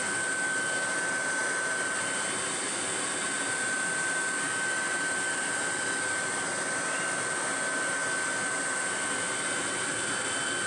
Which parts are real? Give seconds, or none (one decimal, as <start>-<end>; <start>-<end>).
0.0-10.7